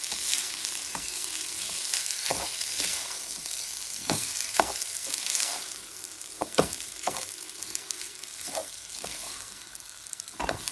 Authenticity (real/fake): fake